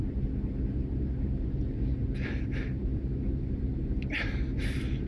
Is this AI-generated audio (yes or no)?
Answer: no